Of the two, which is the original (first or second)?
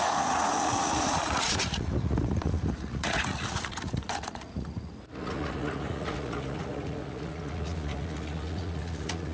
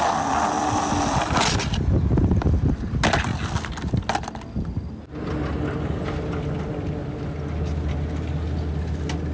second